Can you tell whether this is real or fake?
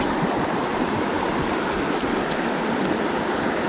real